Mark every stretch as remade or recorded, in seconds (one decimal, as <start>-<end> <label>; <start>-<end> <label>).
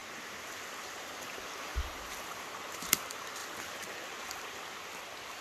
0.0-1.7 recorded; 1.7-2.5 remade; 2.5-5.4 recorded